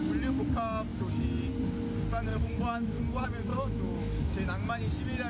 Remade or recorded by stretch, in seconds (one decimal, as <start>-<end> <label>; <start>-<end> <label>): 0.0-2.3 recorded; 2.3-3.0 remade; 3.0-3.5 recorded; 3.5-4.3 remade; 4.3-5.3 recorded

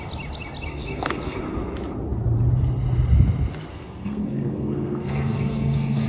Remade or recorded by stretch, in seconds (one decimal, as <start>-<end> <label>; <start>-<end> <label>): 0.0-0.7 recorded; 0.7-1.4 remade; 1.4-3.7 recorded; 3.7-6.1 remade

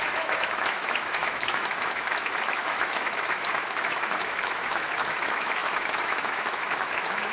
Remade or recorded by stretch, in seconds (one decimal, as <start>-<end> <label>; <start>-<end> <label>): 0.0-7.3 remade

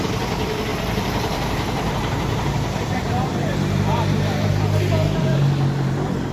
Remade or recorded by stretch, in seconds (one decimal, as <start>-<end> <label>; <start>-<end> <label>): 0.0-0.7 recorded; 0.7-4.5 remade; 4.5-6.3 recorded

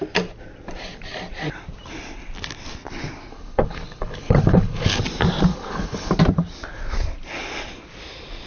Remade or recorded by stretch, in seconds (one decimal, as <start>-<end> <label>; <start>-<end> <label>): 0.0-3.3 recorded; 3.3-5.0 remade; 5.0-5.5 recorded; 5.5-6.1 remade; 6.1-8.5 recorded

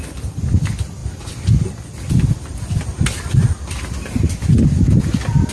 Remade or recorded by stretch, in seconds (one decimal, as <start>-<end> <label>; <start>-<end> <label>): 0.0-5.5 recorded

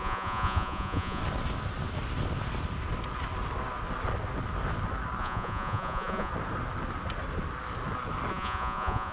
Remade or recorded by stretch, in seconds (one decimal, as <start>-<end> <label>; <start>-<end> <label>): 0.0-1.2 remade; 1.2-5.2 recorded; 5.2-6.3 remade; 6.3-8.3 recorded; 8.3-9.1 remade